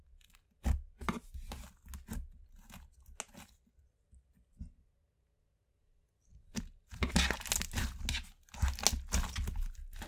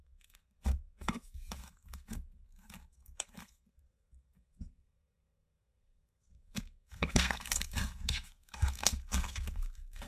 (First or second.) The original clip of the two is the first